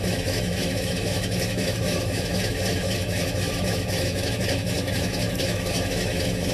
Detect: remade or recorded remade